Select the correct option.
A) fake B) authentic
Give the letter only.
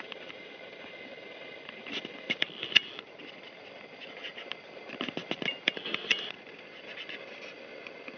B